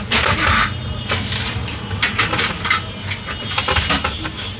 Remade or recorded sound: recorded